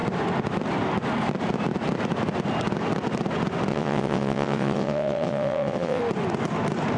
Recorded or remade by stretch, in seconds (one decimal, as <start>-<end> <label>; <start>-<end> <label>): 0.0-3.7 recorded; 3.7-6.0 remade; 6.0-7.0 recorded